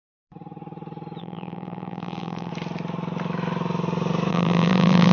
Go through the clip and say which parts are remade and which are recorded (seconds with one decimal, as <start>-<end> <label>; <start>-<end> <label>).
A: 0.0-1.2 recorded; 1.2-2.5 remade; 2.5-4.3 recorded; 4.3-5.1 remade